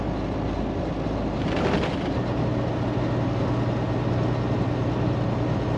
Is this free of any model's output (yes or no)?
yes